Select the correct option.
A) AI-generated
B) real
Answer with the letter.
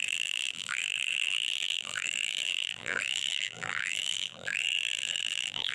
A